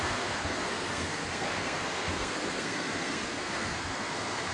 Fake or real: fake